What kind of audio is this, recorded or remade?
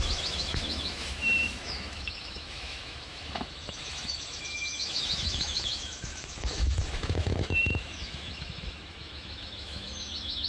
remade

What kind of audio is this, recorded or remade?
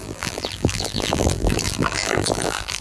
remade